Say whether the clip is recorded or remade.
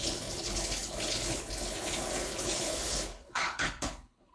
remade